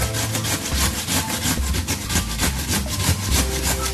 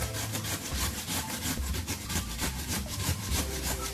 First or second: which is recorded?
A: first